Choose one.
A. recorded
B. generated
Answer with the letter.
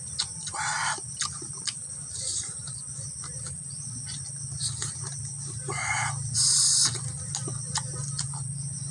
A